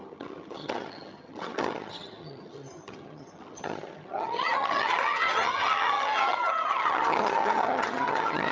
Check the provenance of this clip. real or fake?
fake